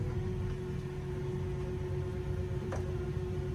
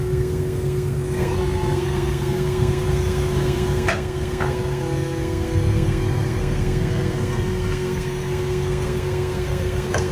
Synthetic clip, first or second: second